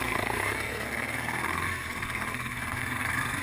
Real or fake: fake